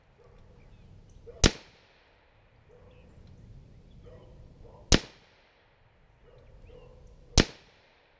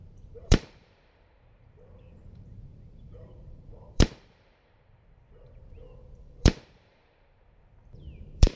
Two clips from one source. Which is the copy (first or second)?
second